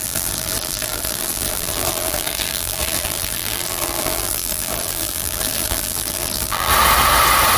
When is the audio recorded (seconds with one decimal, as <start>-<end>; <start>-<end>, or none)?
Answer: 6.7-7.6